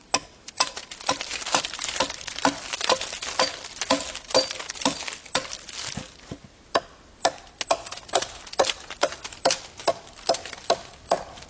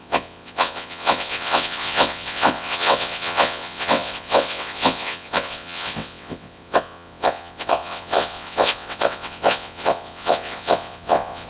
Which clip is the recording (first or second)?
first